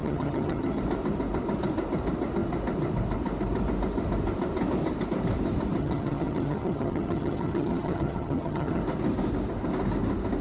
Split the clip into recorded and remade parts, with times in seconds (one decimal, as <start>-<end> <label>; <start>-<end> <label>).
0.0-0.8 remade; 0.8-5.8 recorded; 5.8-8.8 remade; 8.8-10.4 recorded